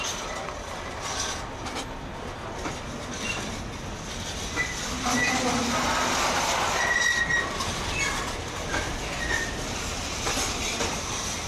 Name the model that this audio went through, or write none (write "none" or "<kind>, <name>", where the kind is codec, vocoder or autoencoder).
none